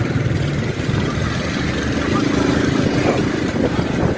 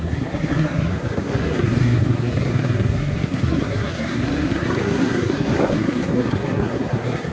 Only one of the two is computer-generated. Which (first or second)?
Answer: second